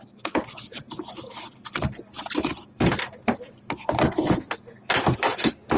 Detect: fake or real fake